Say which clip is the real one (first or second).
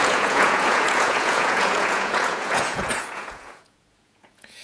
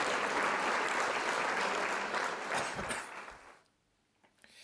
second